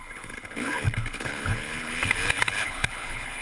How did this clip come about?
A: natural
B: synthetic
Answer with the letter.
B